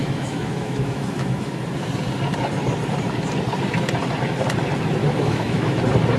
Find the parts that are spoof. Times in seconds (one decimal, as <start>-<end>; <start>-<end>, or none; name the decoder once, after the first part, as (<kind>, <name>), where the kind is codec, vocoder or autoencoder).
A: 0.0-1.6 (autoencoder, DAC-VAE); 5.0-5.8